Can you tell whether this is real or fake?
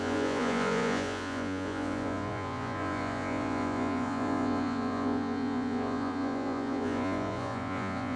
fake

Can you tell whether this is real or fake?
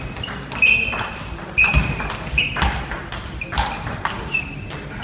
real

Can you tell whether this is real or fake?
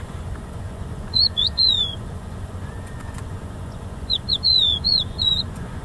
fake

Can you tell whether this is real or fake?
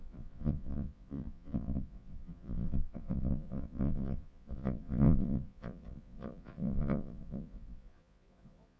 fake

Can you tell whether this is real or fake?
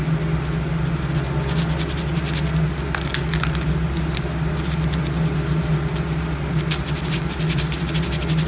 real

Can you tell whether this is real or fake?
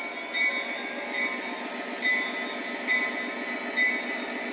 real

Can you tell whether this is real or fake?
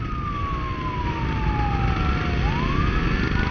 real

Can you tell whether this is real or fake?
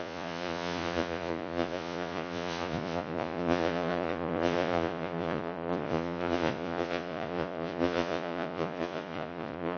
fake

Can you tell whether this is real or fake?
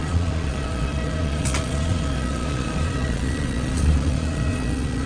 fake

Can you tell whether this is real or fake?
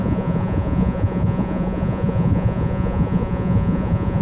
fake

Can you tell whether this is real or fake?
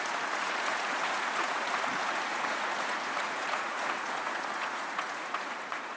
fake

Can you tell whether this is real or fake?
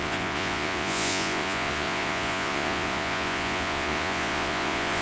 fake